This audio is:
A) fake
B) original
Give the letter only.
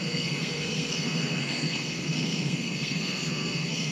A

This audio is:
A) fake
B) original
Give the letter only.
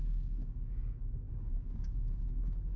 A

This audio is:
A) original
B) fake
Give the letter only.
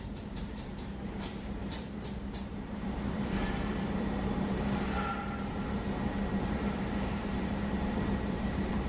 B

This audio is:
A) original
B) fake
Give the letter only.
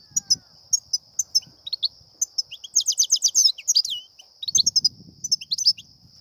A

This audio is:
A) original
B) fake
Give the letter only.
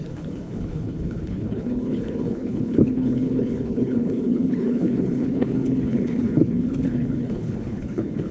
B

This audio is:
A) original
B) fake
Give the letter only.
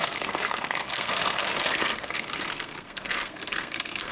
B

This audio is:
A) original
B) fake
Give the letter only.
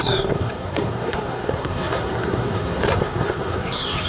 B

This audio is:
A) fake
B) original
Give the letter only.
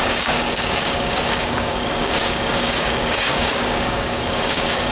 A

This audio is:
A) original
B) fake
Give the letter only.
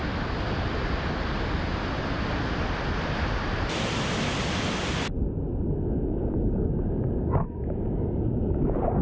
A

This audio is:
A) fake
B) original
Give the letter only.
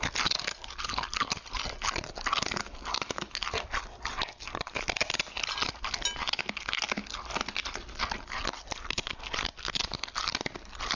B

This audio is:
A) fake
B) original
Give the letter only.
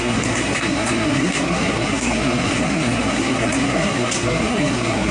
A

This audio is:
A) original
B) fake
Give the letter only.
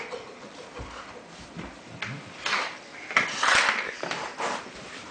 A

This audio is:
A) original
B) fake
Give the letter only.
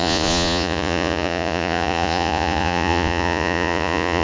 B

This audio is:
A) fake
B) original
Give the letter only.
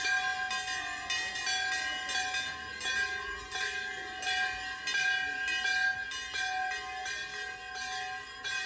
B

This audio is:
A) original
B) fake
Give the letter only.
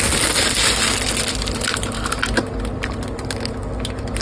A